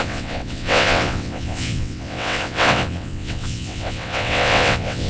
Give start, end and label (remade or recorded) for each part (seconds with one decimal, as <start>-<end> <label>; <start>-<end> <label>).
0.0-5.1 remade